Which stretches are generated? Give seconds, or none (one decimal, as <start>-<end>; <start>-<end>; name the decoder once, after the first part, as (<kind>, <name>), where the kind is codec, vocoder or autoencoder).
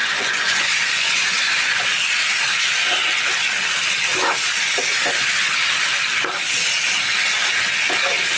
0.0-1.8 (vocoder, Vocos)